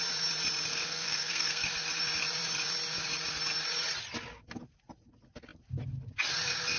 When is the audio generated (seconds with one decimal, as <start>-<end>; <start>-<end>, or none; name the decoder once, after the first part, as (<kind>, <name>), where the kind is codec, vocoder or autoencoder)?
0.7-1.7 (codec, SNAC)